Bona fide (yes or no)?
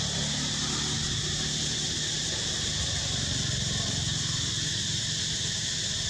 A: yes